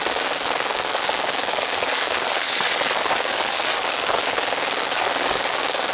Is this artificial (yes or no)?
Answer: yes